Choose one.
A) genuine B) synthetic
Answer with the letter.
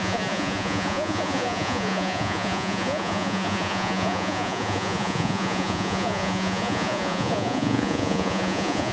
B